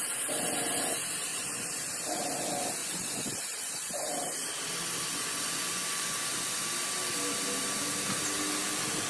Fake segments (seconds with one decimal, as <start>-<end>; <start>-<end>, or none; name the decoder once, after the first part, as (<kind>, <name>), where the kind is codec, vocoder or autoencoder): 1.3-1.9 (vocoder, Vocos); 2.8-4.1; 5.1-6.7